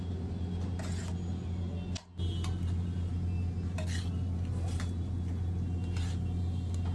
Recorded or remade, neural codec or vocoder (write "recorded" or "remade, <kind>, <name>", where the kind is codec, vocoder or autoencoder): recorded